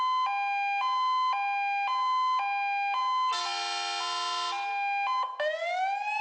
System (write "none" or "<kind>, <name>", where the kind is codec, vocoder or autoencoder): none